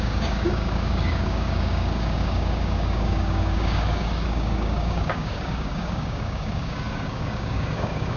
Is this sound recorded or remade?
remade